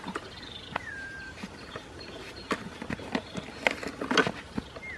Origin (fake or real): real